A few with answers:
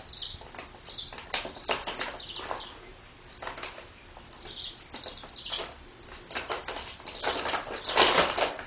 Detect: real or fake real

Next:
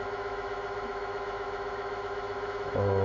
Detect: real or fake fake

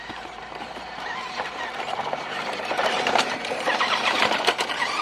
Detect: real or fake fake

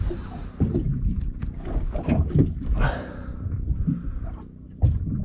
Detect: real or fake real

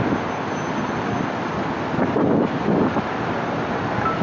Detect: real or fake real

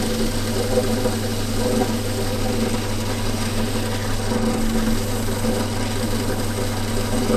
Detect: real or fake real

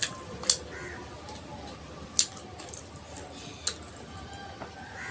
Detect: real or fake real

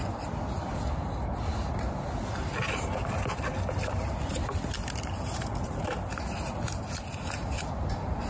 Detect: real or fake real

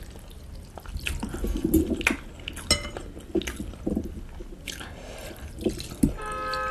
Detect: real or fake real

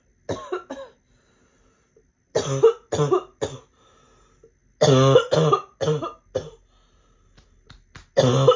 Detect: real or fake real